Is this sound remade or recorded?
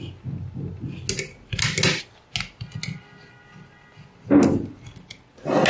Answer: recorded